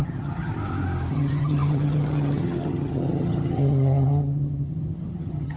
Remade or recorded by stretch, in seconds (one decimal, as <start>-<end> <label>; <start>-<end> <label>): 0.0-0.5 remade; 0.5-1.1 recorded; 1.1-5.6 remade